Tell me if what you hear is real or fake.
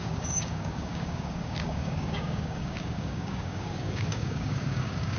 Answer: fake